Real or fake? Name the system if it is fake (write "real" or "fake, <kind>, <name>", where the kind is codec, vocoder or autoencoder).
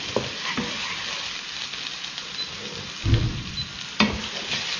real